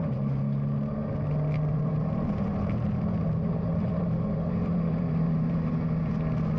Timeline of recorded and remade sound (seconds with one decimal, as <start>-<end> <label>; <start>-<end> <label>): 0.0-1.7 recorded; 1.7-5.7 remade; 5.7-6.6 recorded